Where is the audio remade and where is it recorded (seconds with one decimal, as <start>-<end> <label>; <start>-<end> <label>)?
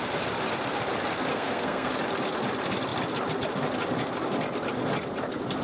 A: 0.0-1.3 recorded; 1.3-1.9 remade; 1.9-5.6 recorded